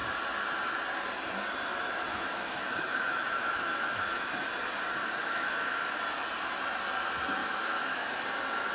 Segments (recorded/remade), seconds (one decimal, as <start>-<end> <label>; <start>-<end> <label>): 0.0-2.1 recorded; 2.1-4.3 remade; 4.3-5.0 recorded; 5.0-6.0 remade; 6.0-7.4 recorded; 7.4-8.2 remade; 8.2-8.7 recorded

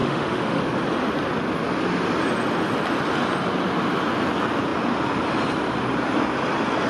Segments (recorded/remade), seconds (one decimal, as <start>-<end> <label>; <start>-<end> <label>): 0.0-0.6 remade; 0.6-6.9 recorded

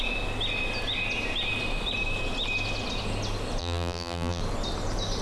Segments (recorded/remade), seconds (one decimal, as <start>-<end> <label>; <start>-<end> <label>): 0.0-3.6 recorded; 3.6-4.4 remade; 4.4-5.2 recorded

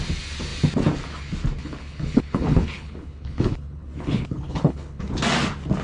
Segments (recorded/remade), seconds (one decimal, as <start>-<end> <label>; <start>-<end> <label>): 0.0-1.6 recorded; 1.6-5.1 remade; 5.1-5.8 recorded

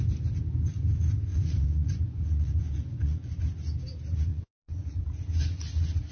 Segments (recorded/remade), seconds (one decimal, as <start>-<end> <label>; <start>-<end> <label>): 0.0-1.3 recorded; 1.3-3.4 remade; 3.4-4.3 recorded; 4.3-5.0 remade; 5.0-6.1 recorded